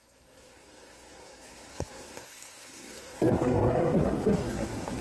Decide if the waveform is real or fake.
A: fake